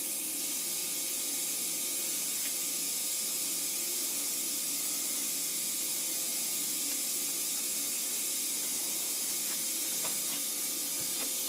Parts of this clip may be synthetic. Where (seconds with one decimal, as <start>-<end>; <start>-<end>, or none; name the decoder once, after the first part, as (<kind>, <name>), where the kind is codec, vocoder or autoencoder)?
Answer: none